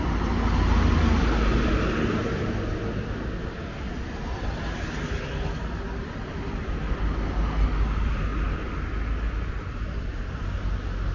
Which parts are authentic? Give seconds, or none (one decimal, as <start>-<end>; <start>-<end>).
0.0-11.1